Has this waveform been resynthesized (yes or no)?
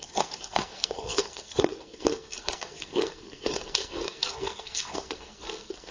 yes